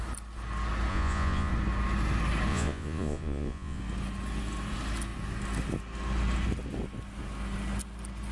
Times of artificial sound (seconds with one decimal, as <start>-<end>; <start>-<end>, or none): 0.9-1.5; 2.5-3.8